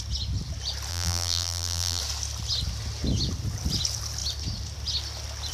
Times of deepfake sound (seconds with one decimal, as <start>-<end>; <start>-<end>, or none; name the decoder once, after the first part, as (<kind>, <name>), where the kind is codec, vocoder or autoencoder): 0.9-2.0 (vocoder, BigVGAN v2)